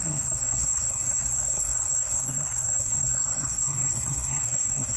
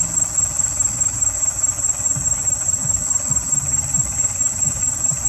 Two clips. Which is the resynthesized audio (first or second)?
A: first